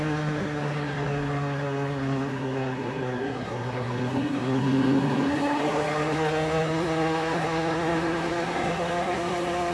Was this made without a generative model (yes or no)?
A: no